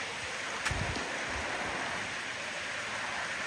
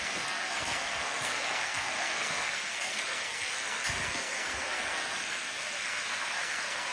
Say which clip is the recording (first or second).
first